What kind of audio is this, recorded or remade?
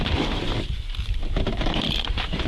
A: remade